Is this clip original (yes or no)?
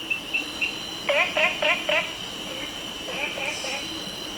yes